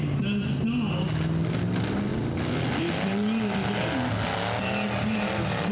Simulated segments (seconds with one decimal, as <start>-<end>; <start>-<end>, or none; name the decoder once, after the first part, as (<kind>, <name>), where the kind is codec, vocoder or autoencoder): none

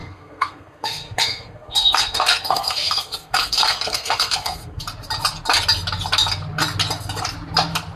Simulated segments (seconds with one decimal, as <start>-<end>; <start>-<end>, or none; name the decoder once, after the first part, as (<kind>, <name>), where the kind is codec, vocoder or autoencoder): 0.0-4.8 (codec, SNAC)

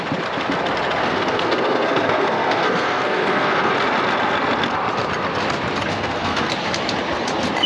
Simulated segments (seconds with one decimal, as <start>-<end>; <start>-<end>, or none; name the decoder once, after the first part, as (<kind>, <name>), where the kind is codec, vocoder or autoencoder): 1.0-3.7 (codec, SNAC); 5.9-6.5